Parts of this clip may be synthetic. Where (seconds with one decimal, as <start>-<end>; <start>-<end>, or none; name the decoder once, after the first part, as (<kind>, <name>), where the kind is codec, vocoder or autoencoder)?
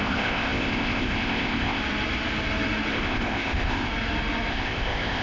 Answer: 0.0-1.8 (codec, ZipCodec); 2.9-3.9; 4.5-5.2